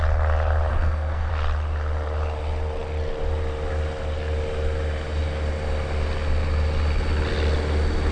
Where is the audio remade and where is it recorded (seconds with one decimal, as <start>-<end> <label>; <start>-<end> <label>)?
0.0-0.7 recorded; 0.7-1.3 remade; 1.3-8.1 recorded